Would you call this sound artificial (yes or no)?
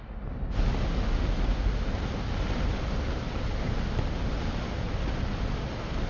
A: no